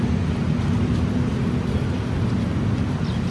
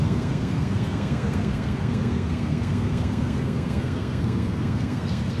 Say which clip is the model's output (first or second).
second